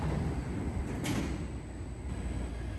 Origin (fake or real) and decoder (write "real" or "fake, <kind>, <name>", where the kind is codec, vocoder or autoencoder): real